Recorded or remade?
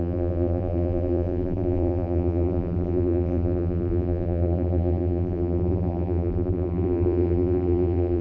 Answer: remade